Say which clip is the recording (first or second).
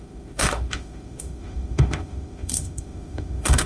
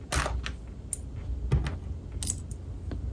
second